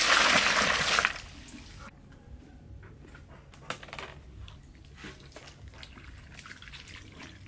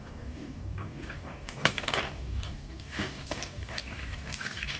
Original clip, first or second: first